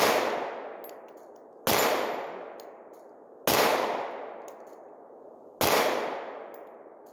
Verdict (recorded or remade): recorded